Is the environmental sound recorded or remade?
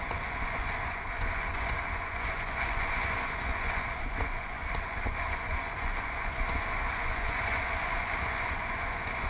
remade